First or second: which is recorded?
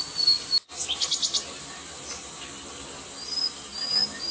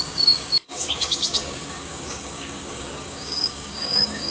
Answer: first